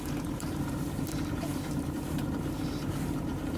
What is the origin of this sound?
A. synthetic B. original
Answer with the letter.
A